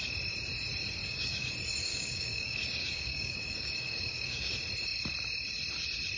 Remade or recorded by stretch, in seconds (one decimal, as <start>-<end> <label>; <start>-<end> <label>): 0.0-1.0 recorded; 1.0-1.5 remade; 1.5-1.9 recorded; 1.9-4.5 remade; 4.5-6.2 recorded